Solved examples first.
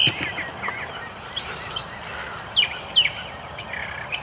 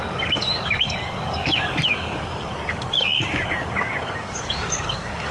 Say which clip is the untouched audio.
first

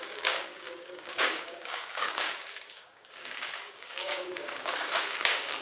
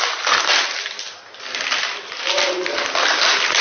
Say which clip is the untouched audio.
second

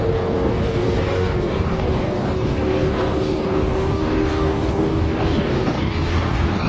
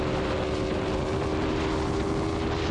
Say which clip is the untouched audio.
second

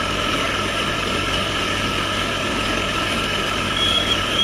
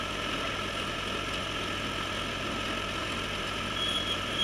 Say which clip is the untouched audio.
second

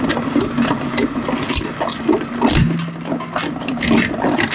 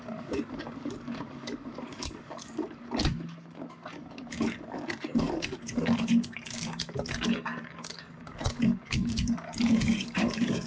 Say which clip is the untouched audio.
first